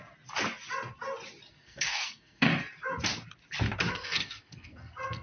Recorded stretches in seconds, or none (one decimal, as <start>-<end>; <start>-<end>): 0.0-1.5; 2.5-3.9